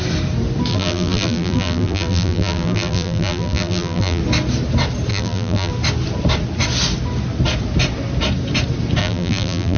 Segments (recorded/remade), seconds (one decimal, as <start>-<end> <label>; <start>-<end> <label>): 0.0-0.7 recorded; 0.7-4.2 remade; 4.2-5.1 recorded; 5.1-5.7 remade; 5.7-9.0 recorded; 9.0-9.8 remade